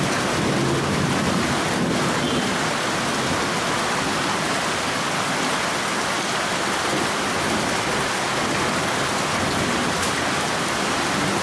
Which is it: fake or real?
real